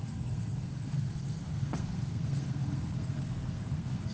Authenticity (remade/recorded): remade